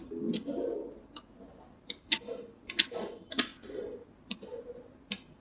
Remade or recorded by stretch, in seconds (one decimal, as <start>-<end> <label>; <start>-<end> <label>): 0.0-5.4 recorded